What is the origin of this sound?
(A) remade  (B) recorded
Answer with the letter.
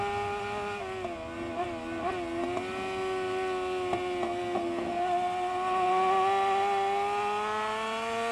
B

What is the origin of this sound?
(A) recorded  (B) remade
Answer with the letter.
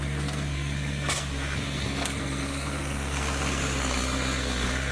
B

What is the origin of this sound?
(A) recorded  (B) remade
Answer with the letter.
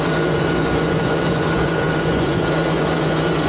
B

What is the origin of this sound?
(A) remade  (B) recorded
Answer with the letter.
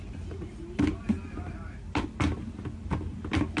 B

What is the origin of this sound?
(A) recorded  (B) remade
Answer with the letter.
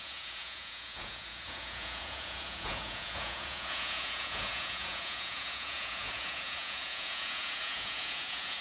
B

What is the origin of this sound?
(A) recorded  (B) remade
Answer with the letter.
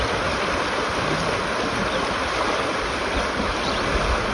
A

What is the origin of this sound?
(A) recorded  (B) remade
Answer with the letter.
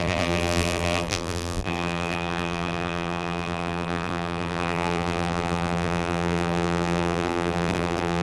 B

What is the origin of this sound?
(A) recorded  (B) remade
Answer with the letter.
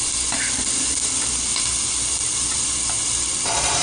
A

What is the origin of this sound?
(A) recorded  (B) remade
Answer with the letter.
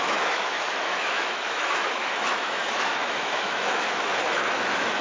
B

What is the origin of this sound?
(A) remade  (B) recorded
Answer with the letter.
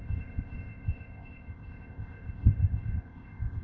A